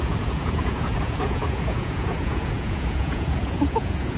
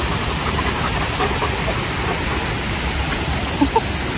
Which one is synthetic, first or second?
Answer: first